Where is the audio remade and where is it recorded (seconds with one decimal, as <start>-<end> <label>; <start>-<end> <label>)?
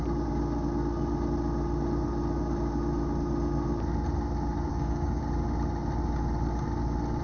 0.0-4.7 recorded; 4.7-5.2 remade; 5.2-7.2 recorded